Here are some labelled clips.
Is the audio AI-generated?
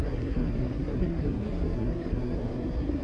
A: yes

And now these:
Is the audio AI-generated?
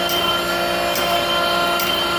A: no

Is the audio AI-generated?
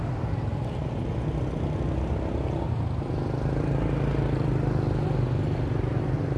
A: no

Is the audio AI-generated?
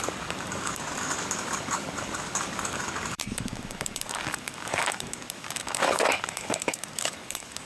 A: yes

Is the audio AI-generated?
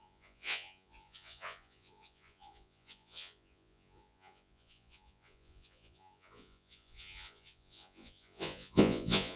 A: yes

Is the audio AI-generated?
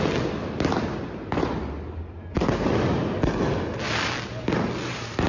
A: no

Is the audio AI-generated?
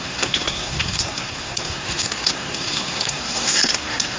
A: yes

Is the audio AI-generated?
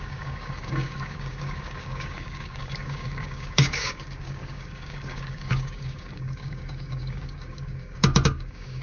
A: yes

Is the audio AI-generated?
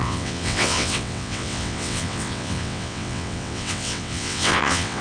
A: yes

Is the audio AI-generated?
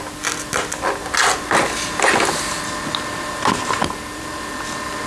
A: no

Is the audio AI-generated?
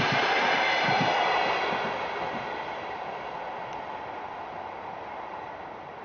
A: no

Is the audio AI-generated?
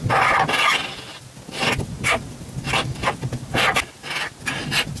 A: no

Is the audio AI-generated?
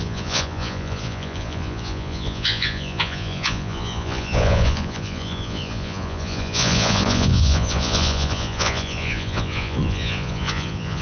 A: yes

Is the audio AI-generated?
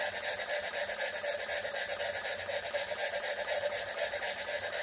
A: no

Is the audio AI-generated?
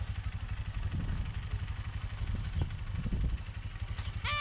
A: no